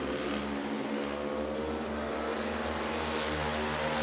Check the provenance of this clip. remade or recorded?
recorded